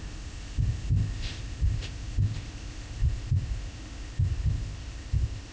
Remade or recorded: remade